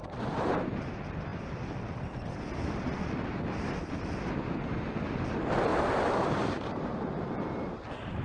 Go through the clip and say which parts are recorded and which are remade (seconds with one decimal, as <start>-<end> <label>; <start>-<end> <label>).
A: 0.0-0.7 remade; 0.7-5.7 recorded; 5.7-7.1 remade; 7.1-8.2 recorded